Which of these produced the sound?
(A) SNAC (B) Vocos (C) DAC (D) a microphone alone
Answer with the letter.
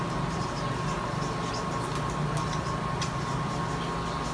D